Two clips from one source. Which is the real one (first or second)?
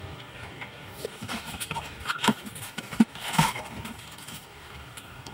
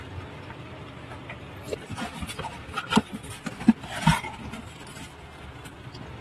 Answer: second